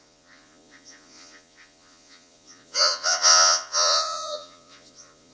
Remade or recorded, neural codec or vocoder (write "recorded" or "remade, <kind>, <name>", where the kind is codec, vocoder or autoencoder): remade, vocoder, Vocos